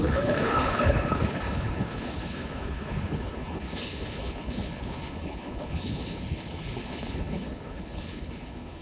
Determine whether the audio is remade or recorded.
remade